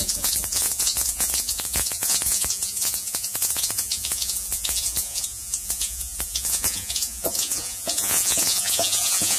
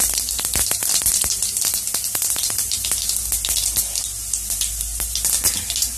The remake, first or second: first